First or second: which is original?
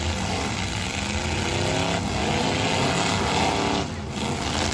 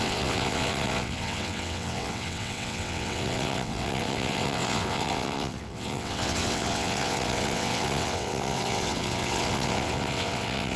first